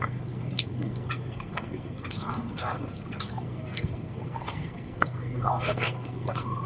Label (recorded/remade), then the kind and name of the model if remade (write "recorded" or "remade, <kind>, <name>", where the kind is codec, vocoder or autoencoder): remade, codec, SNAC